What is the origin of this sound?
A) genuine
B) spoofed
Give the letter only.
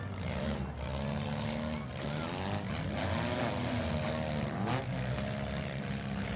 A